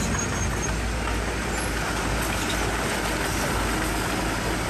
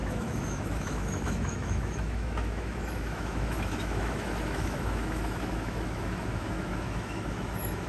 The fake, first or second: second